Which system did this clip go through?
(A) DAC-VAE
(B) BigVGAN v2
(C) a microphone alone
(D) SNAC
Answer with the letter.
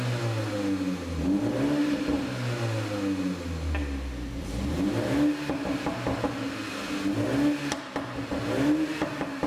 C